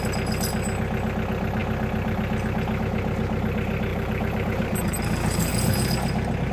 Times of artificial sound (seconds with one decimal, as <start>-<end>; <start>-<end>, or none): 3.9-5.0